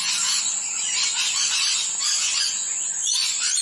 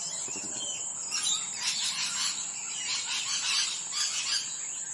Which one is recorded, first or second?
second